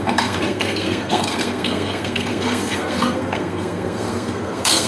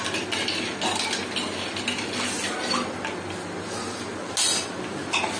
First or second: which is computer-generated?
first